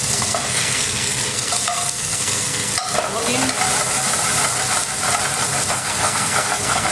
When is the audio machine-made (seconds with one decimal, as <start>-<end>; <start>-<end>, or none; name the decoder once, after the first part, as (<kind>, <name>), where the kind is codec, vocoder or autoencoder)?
0.0-2.7 (codec, SNAC); 5.7-6.9